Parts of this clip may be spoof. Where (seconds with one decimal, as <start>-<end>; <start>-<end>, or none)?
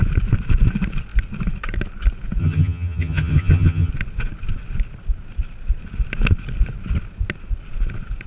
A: 2.4-3.9